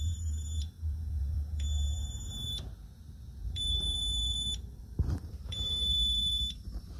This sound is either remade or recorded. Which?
remade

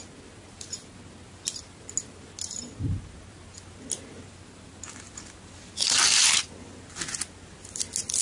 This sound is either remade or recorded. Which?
recorded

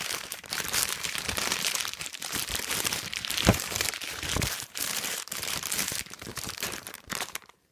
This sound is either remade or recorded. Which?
remade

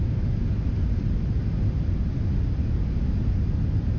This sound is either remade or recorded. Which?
recorded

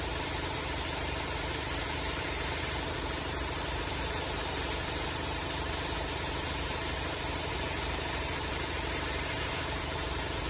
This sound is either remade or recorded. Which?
remade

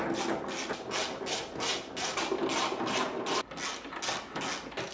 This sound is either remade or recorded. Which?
recorded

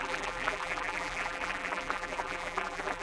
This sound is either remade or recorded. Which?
remade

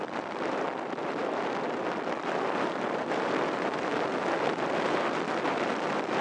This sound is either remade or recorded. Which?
remade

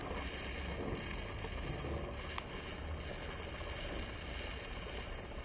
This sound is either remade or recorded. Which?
recorded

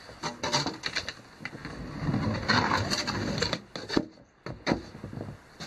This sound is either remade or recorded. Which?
recorded